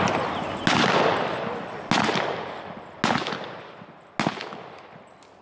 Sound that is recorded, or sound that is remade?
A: recorded